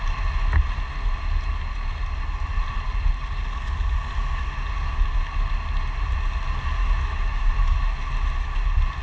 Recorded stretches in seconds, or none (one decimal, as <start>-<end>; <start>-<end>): 0.0-6.8; 8.1-9.0